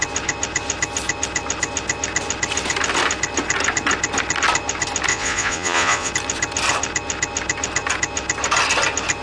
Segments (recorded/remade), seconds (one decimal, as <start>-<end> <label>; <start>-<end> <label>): 0.0-5.1 recorded; 5.1-6.1 remade; 6.1-9.2 recorded